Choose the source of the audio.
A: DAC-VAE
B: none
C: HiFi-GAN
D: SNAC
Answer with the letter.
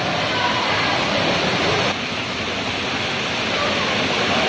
B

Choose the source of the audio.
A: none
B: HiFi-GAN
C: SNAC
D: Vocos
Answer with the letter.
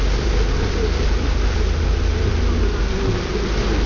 A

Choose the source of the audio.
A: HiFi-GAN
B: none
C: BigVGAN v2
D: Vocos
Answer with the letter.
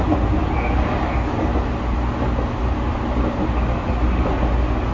B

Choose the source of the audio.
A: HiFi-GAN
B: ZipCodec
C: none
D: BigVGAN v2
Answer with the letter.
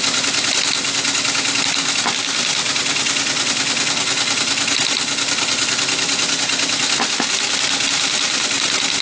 C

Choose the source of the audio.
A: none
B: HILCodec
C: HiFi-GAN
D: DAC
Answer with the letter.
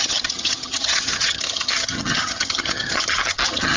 C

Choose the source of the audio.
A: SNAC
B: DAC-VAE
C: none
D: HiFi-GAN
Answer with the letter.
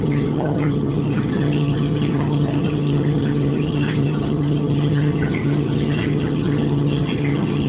D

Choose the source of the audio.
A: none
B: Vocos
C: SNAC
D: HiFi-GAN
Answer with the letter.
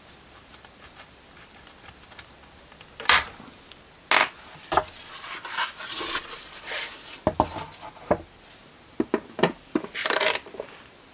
A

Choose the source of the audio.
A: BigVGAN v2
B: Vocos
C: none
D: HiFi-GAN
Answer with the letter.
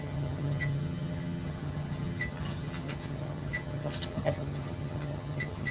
D